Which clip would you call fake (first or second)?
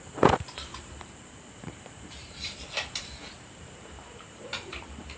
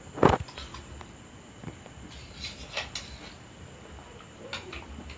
first